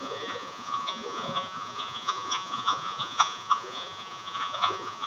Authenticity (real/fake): fake